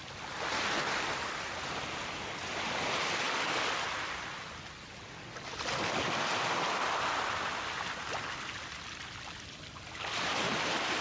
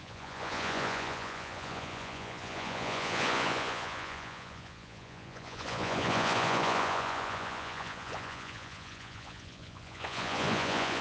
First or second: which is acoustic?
first